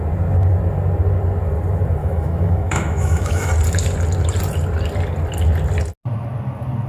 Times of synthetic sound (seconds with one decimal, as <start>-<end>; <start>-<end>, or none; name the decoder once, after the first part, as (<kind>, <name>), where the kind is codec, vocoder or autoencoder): 2.0-3.5 (autoencoder, DAC-VAE)